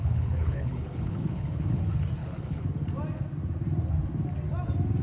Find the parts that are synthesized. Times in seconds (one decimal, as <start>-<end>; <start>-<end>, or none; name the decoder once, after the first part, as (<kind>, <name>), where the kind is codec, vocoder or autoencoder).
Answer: 0.0-1.8 (codec, HILCodec); 2.2-2.7

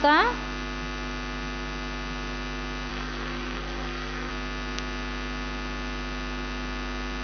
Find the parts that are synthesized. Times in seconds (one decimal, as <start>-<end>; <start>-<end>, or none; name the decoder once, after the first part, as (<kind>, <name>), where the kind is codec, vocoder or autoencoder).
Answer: 2.9-4.3 (codec, SNAC)

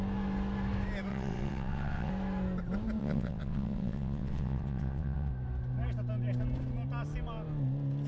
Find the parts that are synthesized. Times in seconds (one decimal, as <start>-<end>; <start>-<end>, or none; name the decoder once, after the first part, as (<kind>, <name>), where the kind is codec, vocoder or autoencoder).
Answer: 1.1-2.1 (vocoder, WaveNeXt); 3.0-5.3

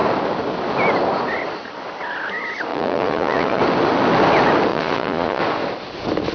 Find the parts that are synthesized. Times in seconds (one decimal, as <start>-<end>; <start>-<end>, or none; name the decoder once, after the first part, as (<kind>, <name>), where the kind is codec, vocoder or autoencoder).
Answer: 2.7-3.6 (vocoder, Vocos); 4.7-5.4

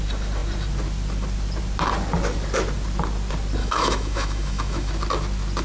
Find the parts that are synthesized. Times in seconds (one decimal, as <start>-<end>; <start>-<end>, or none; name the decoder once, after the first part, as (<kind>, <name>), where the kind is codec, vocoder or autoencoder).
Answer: 3.6-4.9 (autoencoder, DAC-VAE)

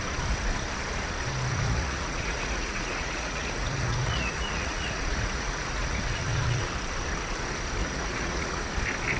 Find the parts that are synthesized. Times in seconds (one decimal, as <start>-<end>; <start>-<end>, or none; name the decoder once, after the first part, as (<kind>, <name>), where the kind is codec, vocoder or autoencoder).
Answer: 1.5-6.7 (vocoder, Vocos); 7.8-8.6